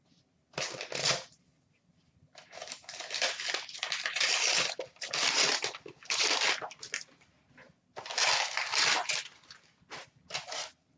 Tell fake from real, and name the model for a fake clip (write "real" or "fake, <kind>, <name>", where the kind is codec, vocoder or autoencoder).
real